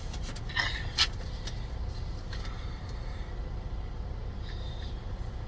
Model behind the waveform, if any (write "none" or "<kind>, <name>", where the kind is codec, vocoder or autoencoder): vocoder, BigVGAN v2